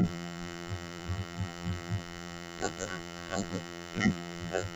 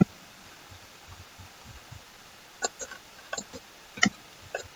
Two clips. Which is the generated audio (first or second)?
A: first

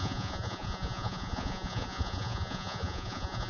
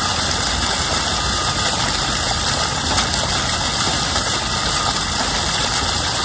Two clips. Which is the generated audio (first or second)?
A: first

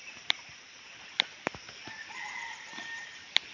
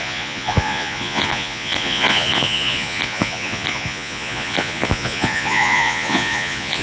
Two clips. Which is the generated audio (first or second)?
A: second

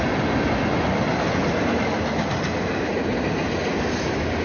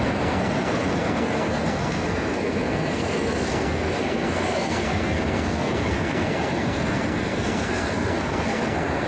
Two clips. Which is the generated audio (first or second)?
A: second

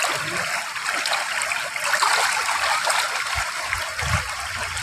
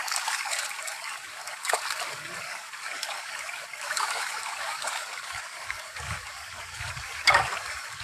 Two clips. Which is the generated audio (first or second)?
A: second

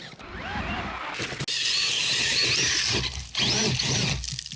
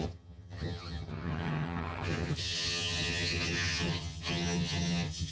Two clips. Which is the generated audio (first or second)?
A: second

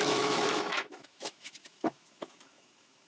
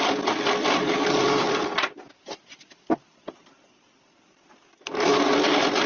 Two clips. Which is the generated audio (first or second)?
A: first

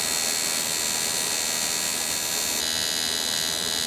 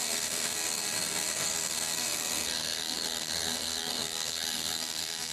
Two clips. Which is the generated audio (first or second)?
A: second